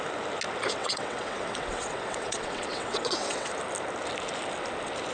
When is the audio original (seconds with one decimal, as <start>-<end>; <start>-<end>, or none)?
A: 0.0-0.8; 3.5-5.1